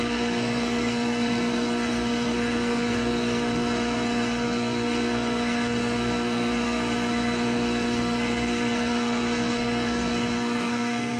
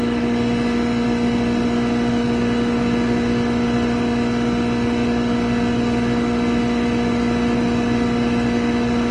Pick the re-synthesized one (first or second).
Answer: first